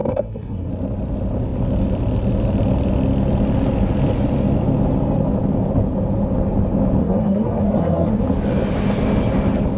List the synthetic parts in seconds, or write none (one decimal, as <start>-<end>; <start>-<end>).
0.0-0.7; 7.0-8.2